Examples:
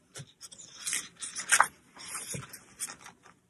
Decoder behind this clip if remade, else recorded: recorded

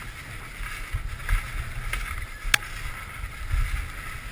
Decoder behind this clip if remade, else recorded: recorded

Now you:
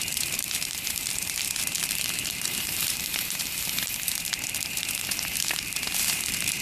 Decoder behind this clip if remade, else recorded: remade, vocoder, BigVGAN v2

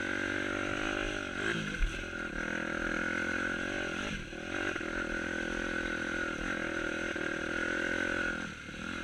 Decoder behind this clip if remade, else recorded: recorded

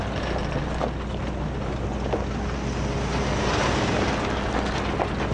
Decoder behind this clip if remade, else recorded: recorded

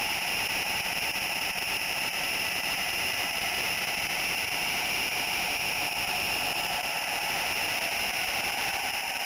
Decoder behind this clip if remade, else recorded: remade, vocoder, BigVGAN v2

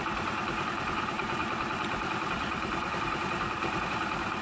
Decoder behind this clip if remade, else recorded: remade, vocoder, BigVGAN v2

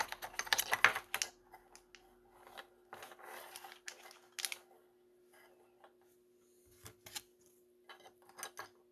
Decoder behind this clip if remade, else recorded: recorded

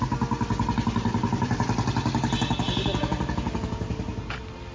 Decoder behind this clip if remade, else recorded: recorded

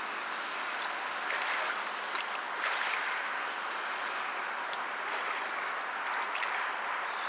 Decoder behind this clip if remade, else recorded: recorded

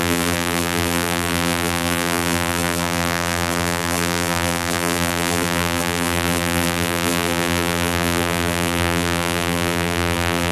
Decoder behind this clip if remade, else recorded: remade, vocoder, BigVGAN v2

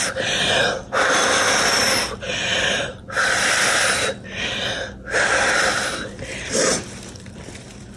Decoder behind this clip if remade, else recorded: remade, vocoder, BigVGAN v2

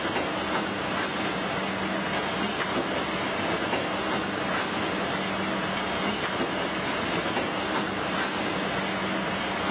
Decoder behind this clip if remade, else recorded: recorded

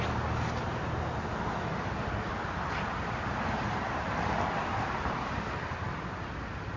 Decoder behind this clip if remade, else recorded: recorded